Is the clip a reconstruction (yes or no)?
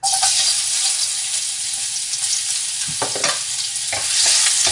no